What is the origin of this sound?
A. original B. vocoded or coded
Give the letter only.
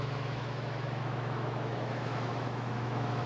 B